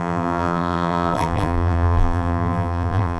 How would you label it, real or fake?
fake